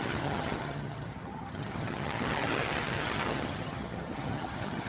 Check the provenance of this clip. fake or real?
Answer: fake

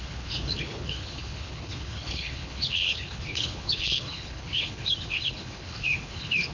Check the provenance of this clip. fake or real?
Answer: fake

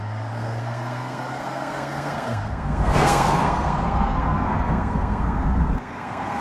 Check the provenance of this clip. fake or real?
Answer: fake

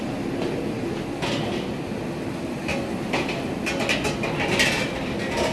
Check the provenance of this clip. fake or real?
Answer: real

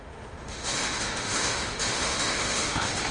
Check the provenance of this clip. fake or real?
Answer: fake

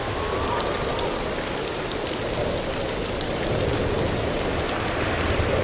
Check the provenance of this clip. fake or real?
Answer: real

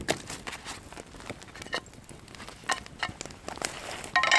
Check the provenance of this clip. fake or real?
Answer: real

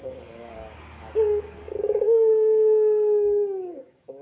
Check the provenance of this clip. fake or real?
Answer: fake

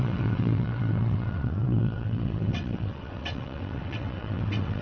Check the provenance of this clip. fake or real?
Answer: fake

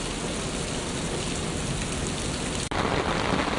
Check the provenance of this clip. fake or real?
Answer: real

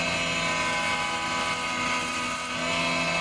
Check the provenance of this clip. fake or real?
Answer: real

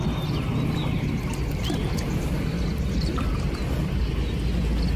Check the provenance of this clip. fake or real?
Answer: real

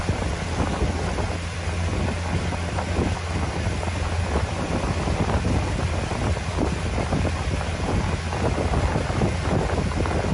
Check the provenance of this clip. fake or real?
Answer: real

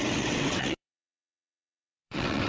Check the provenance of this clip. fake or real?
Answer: fake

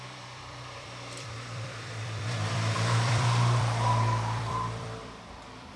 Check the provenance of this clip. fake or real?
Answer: fake